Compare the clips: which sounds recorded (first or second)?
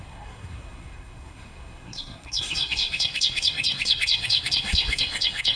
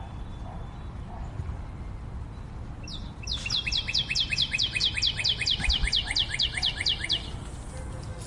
second